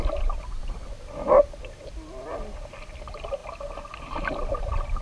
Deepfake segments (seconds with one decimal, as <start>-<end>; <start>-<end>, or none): none